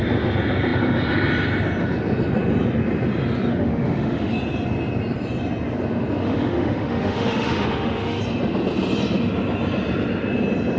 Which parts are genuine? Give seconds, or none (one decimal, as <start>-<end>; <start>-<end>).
0.0-3.5; 4.3-6.2; 8.2-10.8